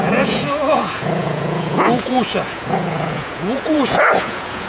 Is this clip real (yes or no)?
no